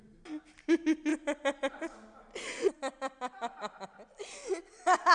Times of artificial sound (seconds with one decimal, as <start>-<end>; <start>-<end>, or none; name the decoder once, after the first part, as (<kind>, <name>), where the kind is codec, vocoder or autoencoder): none